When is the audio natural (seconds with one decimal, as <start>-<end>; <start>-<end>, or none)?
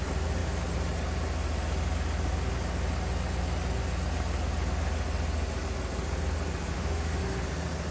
0.0-6.7; 7.2-7.9